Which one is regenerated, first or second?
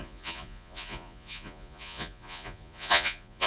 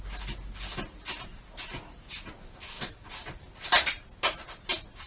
first